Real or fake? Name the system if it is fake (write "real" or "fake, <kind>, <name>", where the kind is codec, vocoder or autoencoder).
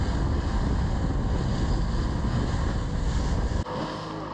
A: real